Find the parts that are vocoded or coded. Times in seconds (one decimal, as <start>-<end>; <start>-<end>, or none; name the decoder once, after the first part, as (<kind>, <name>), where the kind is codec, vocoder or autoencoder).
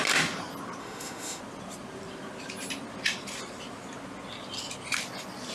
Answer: 0.8-1.4 (autoencoder, DAC-VAE)